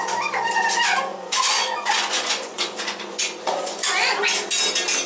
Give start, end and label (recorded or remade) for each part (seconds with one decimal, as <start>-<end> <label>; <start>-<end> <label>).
0.0-1.1 recorded; 1.1-4.2 remade; 4.2-5.1 recorded